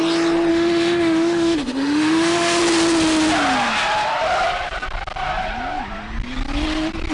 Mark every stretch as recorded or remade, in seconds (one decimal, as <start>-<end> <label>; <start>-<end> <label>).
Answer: 0.0-0.5 recorded; 0.5-2.6 remade; 2.6-7.1 recorded